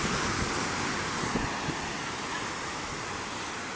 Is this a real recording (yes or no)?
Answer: yes